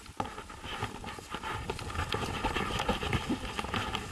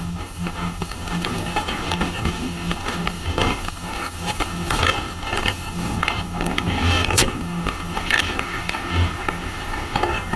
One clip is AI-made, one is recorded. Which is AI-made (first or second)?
second